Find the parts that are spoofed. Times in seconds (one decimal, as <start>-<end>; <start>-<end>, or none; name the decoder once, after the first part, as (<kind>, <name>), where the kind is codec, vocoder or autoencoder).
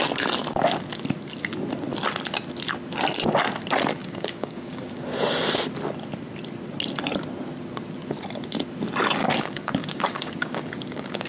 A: 4.0-5.0 (codec, DAC); 9.2-11.3